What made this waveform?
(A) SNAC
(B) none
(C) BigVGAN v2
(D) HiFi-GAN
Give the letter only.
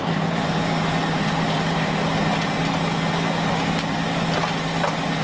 B